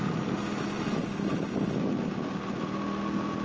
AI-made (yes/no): no